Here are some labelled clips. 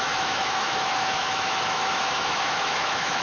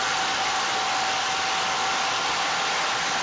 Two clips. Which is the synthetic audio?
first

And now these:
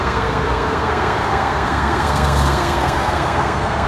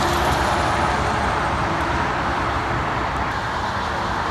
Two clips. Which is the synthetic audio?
first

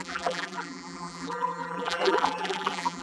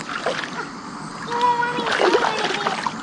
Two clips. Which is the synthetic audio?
first